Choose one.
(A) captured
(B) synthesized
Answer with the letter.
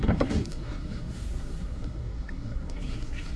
B